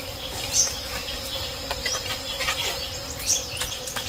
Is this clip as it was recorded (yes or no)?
yes